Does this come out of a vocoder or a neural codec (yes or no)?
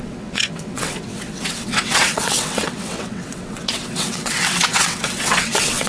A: yes